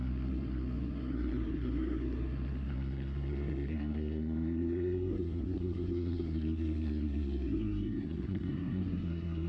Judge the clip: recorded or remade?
remade